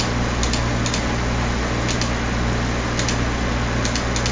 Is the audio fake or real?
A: real